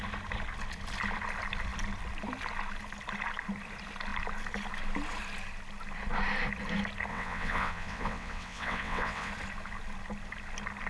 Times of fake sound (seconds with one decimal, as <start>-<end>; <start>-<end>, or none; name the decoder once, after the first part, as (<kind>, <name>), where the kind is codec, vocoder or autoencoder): 7.1-9.3 (vocoder, WaveNeXt)